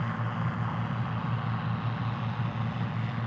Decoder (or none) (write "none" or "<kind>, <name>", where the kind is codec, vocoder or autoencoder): none